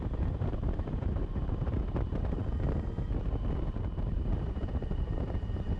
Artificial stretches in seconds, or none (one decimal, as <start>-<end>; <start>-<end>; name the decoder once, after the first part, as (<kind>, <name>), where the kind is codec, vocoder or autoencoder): 0.0-2.4 (vocoder, BigVGAN v2); 3.3-5.8